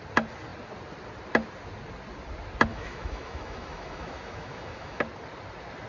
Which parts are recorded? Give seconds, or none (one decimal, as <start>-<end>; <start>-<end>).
0.0-2.7; 5.0-5.9